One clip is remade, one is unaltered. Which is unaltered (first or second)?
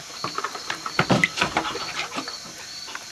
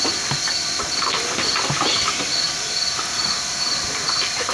second